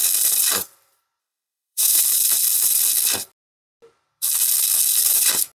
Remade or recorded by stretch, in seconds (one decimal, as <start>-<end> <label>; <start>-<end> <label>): 0.0-1.2 recorded; 1.2-2.0 remade; 2.0-5.6 recorded